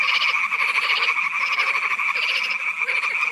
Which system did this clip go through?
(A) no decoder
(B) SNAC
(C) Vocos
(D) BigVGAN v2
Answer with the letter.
A